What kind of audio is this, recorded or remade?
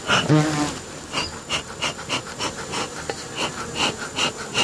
recorded